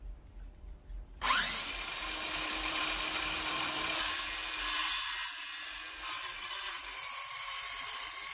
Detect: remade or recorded remade